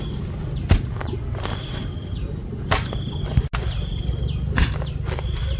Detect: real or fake real